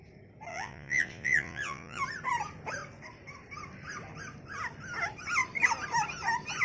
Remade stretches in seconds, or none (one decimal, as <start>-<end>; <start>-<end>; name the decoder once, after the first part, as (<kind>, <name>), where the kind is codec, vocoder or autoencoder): 0.5-2.0 (vocoder, Vocos)